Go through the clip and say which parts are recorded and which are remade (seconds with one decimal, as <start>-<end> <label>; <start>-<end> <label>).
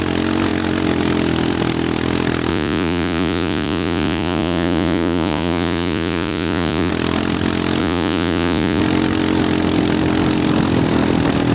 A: 0.0-2.5 recorded; 2.5-6.9 remade; 6.9-7.8 recorded; 7.8-8.8 remade; 8.8-11.5 recorded